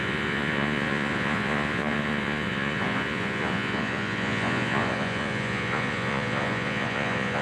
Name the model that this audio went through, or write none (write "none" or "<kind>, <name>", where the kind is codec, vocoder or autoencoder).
vocoder, Vocos